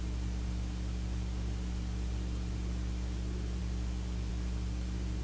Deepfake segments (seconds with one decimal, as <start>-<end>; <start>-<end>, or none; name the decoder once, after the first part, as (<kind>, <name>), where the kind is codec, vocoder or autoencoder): none